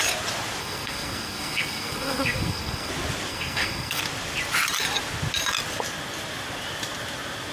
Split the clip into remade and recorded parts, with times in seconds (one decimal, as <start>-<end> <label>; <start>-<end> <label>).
0.0-0.6 recorded; 0.6-2.9 remade; 2.9-3.3 recorded; 3.3-4.0 remade; 4.0-7.5 recorded